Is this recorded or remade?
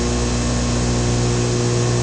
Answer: recorded